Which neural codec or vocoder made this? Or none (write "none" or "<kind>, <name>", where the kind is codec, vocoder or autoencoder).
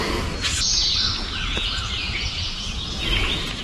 vocoder, Vocos